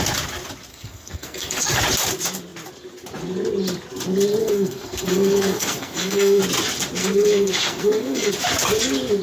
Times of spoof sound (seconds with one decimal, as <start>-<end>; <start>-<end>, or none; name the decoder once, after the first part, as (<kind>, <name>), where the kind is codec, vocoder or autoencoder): 0.7-1.8 (codec, SNAC); 4.4-6.4; 7.0-8.3

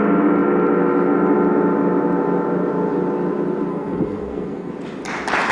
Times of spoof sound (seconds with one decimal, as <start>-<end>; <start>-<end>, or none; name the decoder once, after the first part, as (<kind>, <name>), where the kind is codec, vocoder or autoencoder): 3.7-4.7 (codec, SNAC)

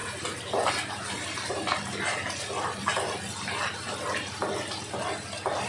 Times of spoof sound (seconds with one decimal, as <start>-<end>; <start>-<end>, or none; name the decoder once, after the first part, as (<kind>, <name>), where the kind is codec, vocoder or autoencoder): none

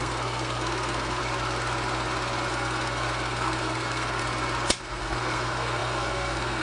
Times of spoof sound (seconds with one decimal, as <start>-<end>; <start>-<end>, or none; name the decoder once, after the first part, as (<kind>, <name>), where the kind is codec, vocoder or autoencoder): 0.0-1.2 (codec, SNAC); 2.5-4.2; 4.8-6.6

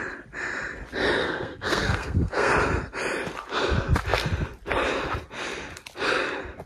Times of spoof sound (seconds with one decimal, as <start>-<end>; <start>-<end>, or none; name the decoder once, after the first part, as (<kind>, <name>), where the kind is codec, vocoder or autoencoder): 1.2-2.5 (codec, SNAC)

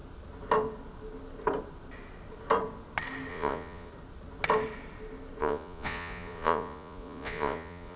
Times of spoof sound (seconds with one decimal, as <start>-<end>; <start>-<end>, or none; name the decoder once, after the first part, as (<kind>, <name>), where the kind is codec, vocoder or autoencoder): 3.3-3.9 (vocoder, Vocos); 5.4-8.0

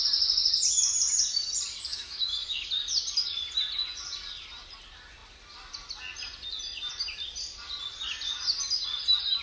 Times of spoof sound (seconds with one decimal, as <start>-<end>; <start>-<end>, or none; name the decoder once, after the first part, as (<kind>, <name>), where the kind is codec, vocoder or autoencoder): 1.9-2.7 (autoencoder, DAC-VAE)

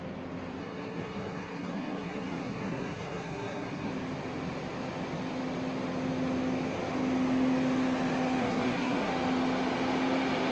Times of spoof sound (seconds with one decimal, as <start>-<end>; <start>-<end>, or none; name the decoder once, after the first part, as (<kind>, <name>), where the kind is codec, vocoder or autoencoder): 0.6-3.9 (codec, SNAC); 8.4-9.1